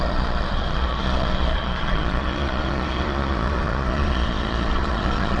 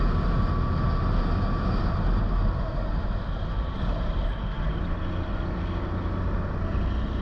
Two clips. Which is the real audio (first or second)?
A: second